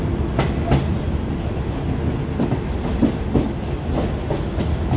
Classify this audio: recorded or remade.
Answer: recorded